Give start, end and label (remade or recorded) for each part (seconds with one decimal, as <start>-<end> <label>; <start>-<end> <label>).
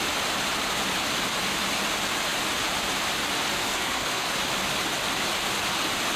0.0-3.5 recorded; 3.5-4.3 remade; 4.3-6.2 recorded